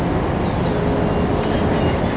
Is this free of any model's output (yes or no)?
yes